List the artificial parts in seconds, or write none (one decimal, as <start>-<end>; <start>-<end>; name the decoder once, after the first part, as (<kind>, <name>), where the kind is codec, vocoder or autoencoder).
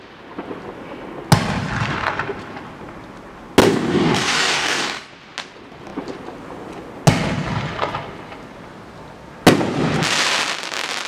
3.6-5.1 (codec, DAC)